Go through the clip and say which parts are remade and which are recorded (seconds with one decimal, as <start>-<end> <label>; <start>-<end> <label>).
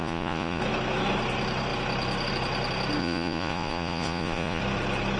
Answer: 0.0-0.6 remade; 0.6-3.0 recorded; 3.0-4.6 remade; 4.6-5.2 recorded